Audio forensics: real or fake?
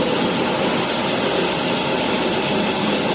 real